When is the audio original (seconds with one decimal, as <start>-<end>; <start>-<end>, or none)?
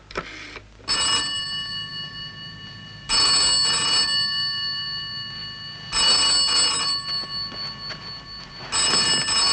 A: 0.0-9.5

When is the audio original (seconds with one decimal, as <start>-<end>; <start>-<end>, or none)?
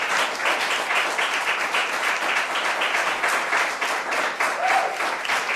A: 0.0-1.8; 4.4-5.6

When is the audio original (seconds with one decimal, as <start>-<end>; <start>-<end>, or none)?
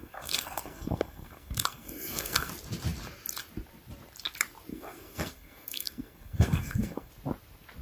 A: 2.5-4.7; 7.1-7.8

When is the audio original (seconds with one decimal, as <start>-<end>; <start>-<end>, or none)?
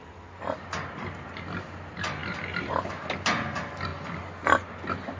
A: 0.0-5.2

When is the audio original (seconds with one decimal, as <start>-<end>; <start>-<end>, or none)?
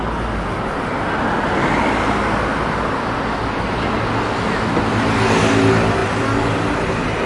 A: 0.0-7.3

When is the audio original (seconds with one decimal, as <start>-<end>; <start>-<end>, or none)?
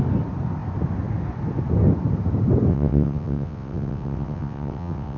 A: 0.0-2.7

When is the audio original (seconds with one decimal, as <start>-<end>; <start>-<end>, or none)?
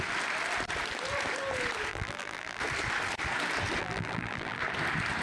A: 0.0-1.9; 2.6-3.8; 4.6-5.2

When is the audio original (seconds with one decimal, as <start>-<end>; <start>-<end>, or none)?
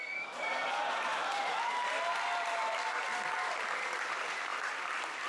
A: 1.1-1.6; 3.0-4.1